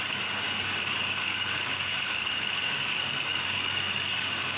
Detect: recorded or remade remade